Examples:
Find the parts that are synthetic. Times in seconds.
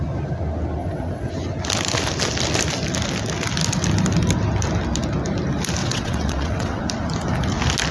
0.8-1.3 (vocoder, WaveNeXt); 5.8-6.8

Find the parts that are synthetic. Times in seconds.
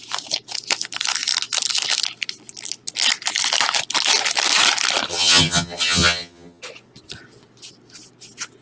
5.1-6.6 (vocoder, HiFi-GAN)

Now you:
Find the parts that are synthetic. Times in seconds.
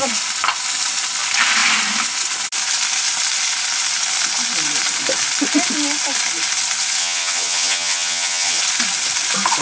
7.0-8.6 (vocoder, HiFi-GAN)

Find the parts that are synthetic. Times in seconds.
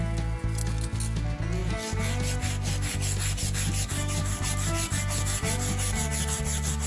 none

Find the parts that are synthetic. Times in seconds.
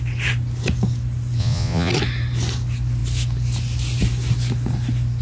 1.4-1.9 (vocoder, Vocos)